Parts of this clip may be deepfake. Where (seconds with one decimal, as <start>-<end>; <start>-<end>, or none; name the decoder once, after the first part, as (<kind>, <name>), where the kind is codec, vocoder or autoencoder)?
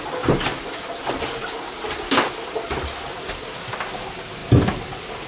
none